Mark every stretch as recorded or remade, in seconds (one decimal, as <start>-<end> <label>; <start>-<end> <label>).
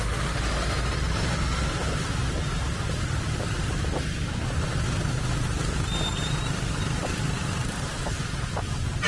0.0-9.1 recorded